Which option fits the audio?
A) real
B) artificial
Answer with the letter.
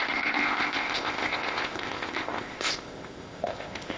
B